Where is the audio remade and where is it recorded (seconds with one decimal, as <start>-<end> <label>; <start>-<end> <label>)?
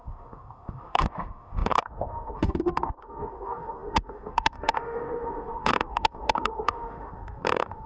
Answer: 0.0-7.9 remade